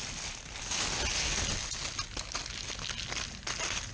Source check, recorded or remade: recorded